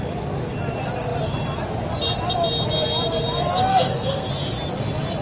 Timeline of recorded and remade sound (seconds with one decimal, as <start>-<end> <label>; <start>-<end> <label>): 0.0-3.5 recorded; 3.5-4.3 remade; 4.3-5.2 recorded